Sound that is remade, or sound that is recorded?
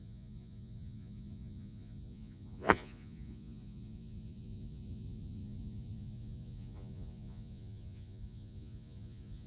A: remade